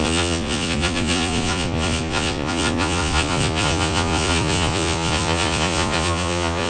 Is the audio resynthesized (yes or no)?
yes